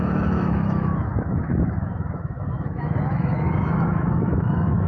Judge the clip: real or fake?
fake